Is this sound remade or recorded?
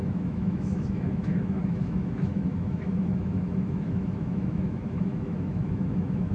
remade